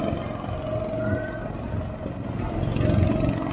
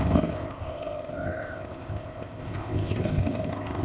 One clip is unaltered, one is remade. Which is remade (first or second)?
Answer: second